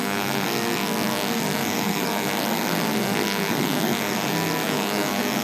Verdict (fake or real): fake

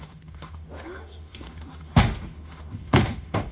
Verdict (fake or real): fake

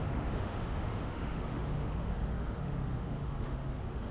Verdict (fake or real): fake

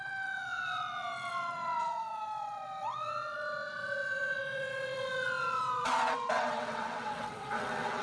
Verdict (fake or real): fake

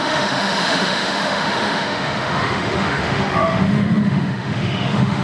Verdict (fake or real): fake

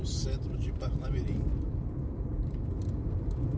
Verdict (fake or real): fake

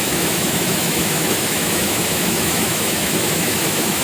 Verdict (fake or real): fake